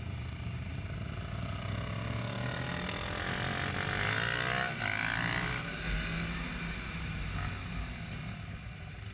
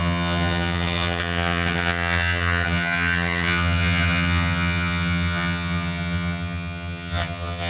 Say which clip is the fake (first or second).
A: second